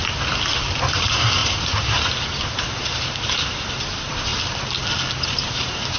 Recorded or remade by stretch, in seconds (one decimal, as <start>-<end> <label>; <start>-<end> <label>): 0.0-0.9 recorded; 0.9-4.3 remade; 4.3-5.2 recorded; 5.2-6.0 remade